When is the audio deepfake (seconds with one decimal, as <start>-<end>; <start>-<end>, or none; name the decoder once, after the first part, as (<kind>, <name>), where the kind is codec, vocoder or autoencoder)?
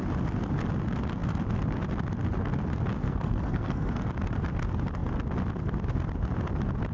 3.0-4.0 (codec, SNAC)